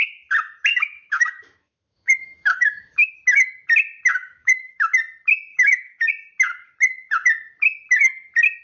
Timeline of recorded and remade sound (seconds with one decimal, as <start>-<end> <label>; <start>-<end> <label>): 0.0-0.7 recorded; 0.7-3.1 remade; 3.1-4.3 recorded; 4.3-4.9 remade; 4.9-5.5 recorded; 5.5-6.1 remade; 6.1-8.6 recorded